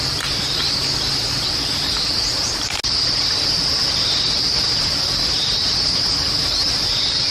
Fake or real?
real